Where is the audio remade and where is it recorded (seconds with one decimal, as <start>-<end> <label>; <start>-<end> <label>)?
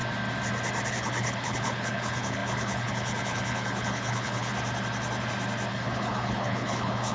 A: 0.0-0.9 recorded; 0.9-4.5 remade; 4.5-5.7 recorded; 5.7-7.1 remade